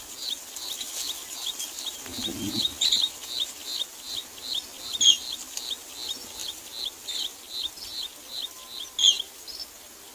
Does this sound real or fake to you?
real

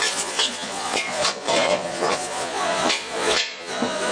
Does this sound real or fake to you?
fake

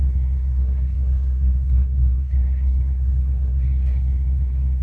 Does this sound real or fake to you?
fake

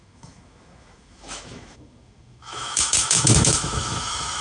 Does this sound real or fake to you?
fake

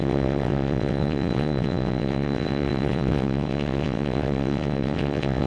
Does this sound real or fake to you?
fake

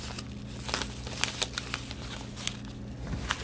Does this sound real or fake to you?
real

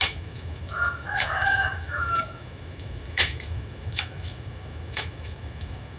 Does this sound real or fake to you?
fake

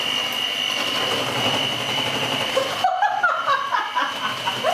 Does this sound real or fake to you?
real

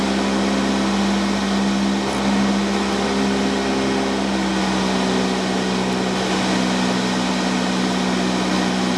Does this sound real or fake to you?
real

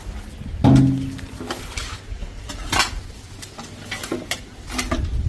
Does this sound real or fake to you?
real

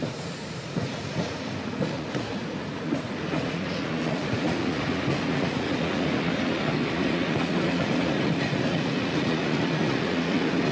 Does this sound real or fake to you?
fake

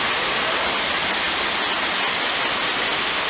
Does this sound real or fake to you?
real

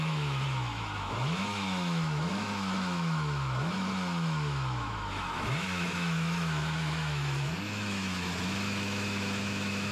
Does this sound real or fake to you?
fake